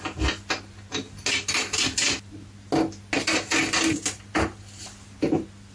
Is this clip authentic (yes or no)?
yes